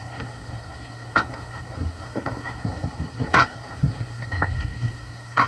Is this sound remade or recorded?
remade